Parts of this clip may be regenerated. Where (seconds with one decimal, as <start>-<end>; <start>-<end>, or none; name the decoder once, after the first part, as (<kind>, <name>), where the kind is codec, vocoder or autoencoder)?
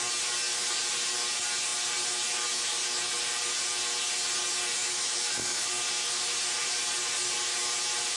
4.8-5.7 (autoencoder, DAC-VAE)